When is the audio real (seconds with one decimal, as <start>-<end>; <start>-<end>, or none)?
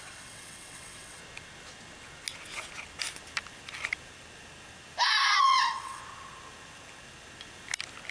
1.2-5.4; 6.0-8.1